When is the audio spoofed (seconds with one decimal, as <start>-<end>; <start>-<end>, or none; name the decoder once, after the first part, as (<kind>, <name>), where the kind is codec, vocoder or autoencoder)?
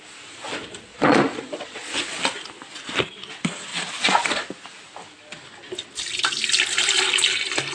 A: 0.9-1.9 (vocoder, Vocos); 3.7-4.5